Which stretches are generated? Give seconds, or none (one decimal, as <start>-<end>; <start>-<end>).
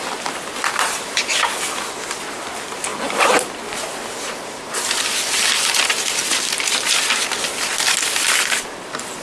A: 6.2-8.0